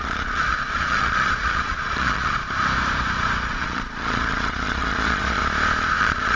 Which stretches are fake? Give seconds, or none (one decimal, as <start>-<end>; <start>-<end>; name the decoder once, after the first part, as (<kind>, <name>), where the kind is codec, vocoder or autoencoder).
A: 0.0-2.4 (vocoder, Vocos); 3.5-5.4; 6.0-6.4